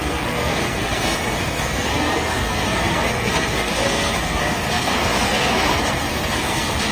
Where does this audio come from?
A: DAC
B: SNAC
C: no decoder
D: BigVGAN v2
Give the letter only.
B